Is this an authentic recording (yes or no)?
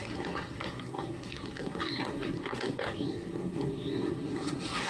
no